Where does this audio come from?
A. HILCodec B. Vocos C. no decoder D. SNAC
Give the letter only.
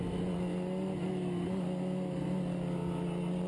C